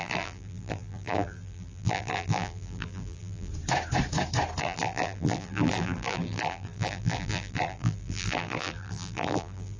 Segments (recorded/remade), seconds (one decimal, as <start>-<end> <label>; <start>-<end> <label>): 0.0-3.5 remade; 3.5-4.6 recorded; 4.6-9.8 remade